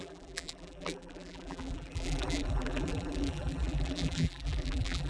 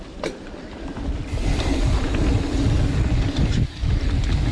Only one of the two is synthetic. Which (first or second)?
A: first